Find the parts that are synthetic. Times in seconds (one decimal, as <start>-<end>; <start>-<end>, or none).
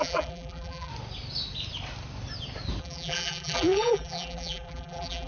0.0-0.9; 2.8-5.3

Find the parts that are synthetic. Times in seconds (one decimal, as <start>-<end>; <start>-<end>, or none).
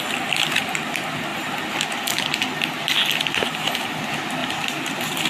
4.4-5.3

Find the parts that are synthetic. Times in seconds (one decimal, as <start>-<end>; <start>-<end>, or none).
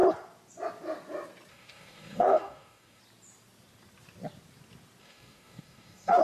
1.5-3.0; 5.0-6.2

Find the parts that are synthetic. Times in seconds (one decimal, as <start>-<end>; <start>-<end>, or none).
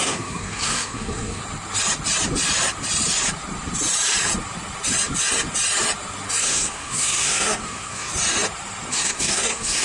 0.0-1.4; 6.4-8.1; 8.9-9.8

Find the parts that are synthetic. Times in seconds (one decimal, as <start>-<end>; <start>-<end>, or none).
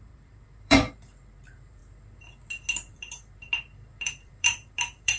0.0-1.8; 2.9-5.2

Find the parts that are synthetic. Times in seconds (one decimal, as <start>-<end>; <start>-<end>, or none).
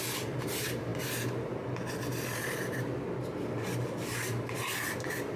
none